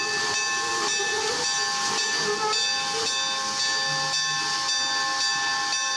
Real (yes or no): yes